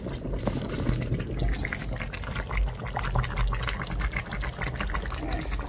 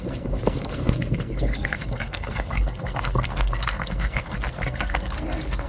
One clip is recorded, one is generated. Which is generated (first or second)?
second